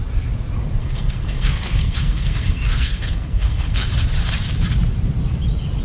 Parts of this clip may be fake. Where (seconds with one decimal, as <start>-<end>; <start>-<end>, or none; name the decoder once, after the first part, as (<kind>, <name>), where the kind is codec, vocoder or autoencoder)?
0.8-3.9 (codec, SNAC)